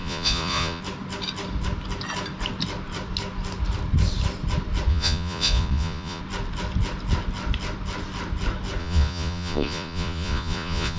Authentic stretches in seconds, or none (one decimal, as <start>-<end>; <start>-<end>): 0.8-4.9; 6.2-8.8